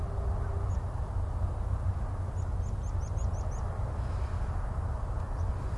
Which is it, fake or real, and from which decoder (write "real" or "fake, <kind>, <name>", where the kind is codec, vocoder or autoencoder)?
real